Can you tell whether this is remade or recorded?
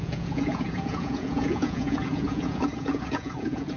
remade